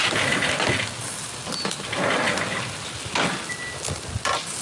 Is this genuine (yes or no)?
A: yes